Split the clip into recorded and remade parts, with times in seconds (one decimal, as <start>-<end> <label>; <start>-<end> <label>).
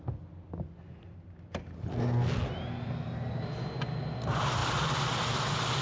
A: 0.0-5.8 recorded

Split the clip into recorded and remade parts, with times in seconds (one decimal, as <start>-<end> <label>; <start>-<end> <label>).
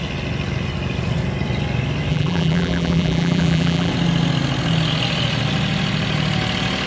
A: 0.0-2.1 recorded; 2.1-3.9 remade; 3.9-6.9 recorded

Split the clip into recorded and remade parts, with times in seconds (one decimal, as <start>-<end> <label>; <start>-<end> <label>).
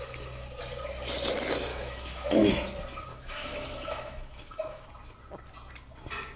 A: 0.0-1.7 recorded; 1.7-2.5 remade; 2.5-3.1 recorded; 3.1-4.9 remade; 4.9-6.4 recorded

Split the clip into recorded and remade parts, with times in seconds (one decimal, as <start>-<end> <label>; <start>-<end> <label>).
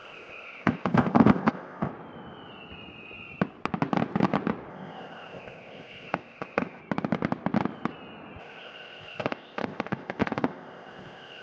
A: 0.0-1.9 remade; 1.9-4.7 recorded; 4.7-6.8 remade; 6.8-8.4 recorded; 8.4-11.4 remade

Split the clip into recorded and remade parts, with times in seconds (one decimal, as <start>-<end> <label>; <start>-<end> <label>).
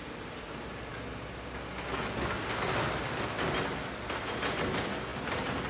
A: 0.0-5.7 recorded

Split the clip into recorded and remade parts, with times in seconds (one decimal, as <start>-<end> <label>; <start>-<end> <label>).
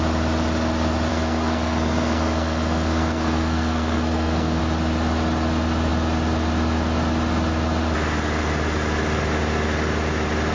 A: 0.0-1.1 recorded; 1.1-4.6 remade; 4.6-10.5 recorded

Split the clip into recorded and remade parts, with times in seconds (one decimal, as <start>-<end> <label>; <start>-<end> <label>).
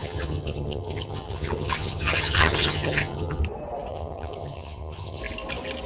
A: 0.0-3.4 remade; 3.4-3.9 recorded; 3.9-5.2 remade; 5.2-5.9 recorded